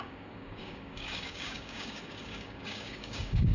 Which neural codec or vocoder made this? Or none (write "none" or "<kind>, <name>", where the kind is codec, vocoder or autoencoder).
codec, DAC